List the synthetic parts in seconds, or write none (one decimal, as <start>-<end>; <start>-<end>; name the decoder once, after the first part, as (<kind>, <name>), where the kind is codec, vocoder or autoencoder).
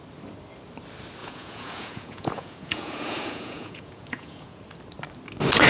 1.2-4.6 (vocoder, Vocos)